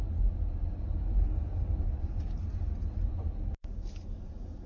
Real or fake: real